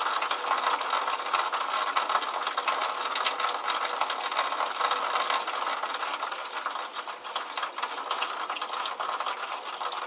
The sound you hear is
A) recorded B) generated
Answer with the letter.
A